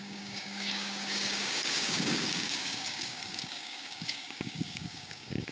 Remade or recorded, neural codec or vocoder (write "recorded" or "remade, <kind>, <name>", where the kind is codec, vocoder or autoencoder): remade, codec, DAC